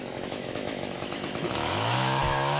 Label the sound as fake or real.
fake